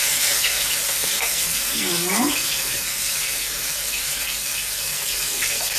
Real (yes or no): no